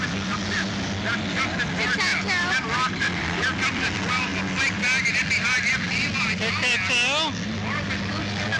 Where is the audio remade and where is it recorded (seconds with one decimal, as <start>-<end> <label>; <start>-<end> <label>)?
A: 0.0-8.6 recorded